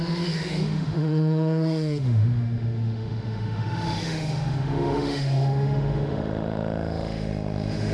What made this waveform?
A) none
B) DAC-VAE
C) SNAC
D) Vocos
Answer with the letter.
B